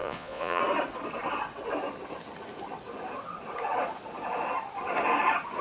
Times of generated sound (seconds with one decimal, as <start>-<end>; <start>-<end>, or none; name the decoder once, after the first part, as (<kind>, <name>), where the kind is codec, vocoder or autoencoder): 0.0-0.6 (vocoder, Vocos)